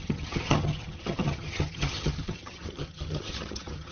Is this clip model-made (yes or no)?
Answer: yes